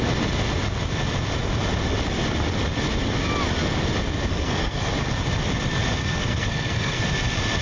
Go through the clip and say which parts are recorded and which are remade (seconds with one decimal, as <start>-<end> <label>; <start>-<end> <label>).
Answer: 0.0-4.3 recorded; 4.3-4.9 remade; 4.9-6.0 recorded; 6.0-7.0 remade; 7.0-7.6 recorded